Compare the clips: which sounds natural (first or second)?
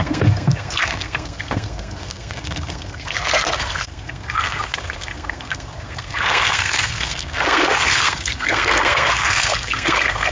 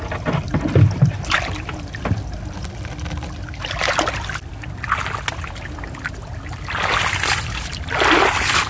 second